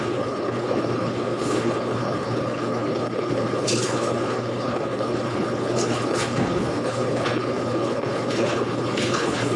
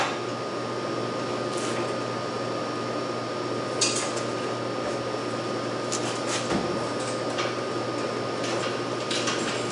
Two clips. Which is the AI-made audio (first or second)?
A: first